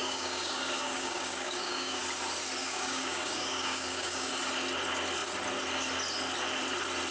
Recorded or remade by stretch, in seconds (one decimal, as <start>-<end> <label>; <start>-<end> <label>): 0.0-2.0 remade; 2.0-2.6 recorded; 2.6-4.3 remade; 4.3-7.1 recorded